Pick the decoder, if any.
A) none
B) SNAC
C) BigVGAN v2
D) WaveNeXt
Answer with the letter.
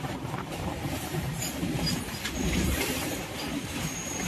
C